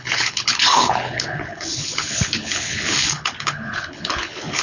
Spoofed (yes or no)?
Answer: yes